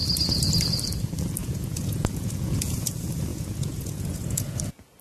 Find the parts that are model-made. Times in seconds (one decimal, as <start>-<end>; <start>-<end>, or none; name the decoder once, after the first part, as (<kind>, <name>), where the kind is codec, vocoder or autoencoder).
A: 1.4-2.9 (vocoder, Vocos); 3.3-4.6